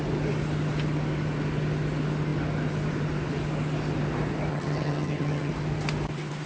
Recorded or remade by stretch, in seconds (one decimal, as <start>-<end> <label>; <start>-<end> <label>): 0.0-4.5 recorded; 4.5-5.5 remade; 5.5-6.5 recorded